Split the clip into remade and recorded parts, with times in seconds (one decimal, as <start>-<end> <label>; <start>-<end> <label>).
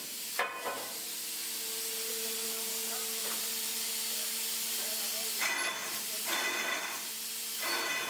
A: 0.0-3.2 recorded; 3.2-3.9 remade; 3.9-5.8 recorded; 5.8-7.1 remade; 7.1-8.1 recorded